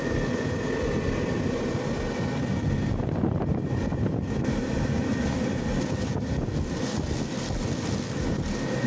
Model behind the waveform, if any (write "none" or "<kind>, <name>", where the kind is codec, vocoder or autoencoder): none